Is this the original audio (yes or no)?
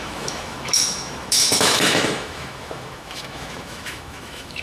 no